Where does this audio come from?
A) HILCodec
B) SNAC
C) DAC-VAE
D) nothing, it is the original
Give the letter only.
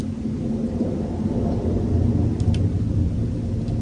D